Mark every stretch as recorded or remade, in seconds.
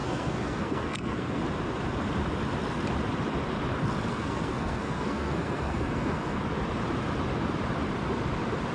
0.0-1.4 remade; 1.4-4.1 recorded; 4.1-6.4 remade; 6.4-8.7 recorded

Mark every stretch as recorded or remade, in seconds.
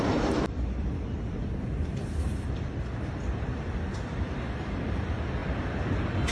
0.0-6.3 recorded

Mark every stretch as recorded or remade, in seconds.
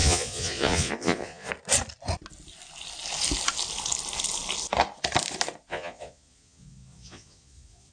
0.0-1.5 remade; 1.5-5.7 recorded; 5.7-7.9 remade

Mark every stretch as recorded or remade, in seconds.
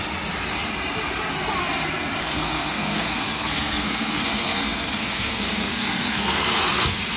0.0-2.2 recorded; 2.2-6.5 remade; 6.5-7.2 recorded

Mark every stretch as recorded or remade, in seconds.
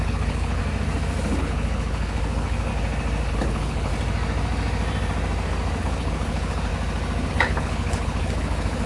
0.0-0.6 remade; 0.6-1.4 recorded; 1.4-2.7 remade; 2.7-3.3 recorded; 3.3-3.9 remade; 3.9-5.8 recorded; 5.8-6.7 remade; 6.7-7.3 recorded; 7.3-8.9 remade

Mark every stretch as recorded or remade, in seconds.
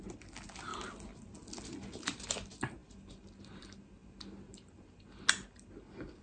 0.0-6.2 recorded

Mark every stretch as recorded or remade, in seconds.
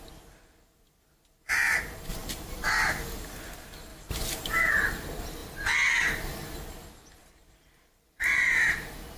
0.0-2.1 recorded; 2.1-2.8 remade; 2.8-3.9 recorded; 3.9-4.7 remade; 4.7-7.2 recorded; 7.2-9.2 remade